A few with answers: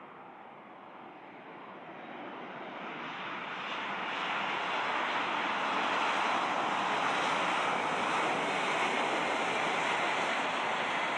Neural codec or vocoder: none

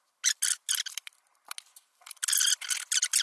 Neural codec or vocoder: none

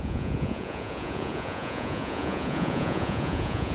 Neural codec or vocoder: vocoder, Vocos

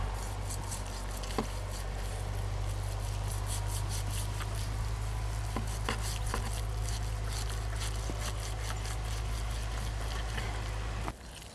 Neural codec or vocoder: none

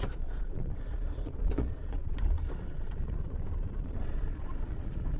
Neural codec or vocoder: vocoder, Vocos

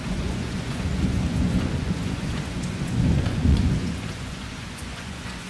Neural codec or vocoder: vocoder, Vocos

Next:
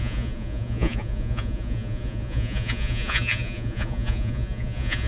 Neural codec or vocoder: vocoder, Vocos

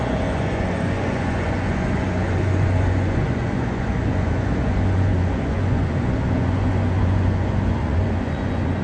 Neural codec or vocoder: vocoder, Vocos